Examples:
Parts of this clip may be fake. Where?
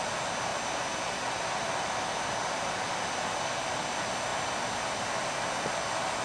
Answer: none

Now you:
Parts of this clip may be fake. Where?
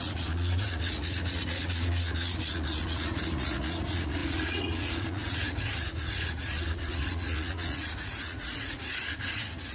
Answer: 0.0-9.7 (vocoder, Vocos)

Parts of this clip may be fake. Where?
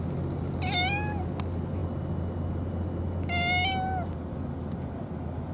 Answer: none